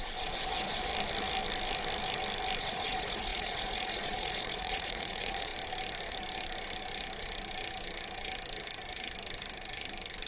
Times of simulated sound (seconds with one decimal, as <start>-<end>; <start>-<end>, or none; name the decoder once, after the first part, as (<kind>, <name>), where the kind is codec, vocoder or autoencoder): 0.0-0.9 (vocoder, Vocos); 2.6-5.5